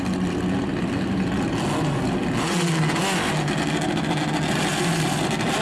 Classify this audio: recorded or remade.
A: recorded